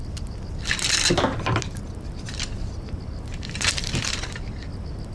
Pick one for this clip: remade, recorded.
recorded